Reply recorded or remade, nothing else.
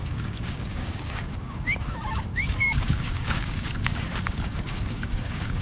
remade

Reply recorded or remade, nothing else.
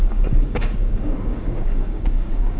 remade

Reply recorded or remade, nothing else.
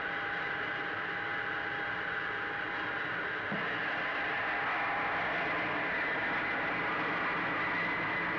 recorded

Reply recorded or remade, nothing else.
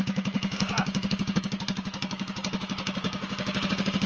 remade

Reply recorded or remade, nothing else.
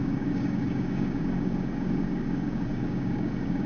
remade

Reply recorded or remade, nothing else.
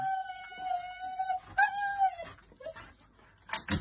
recorded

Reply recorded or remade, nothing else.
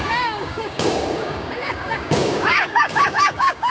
remade